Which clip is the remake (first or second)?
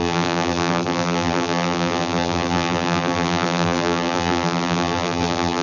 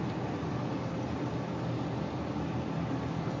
first